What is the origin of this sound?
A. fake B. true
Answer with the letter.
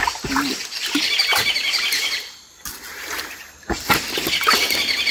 B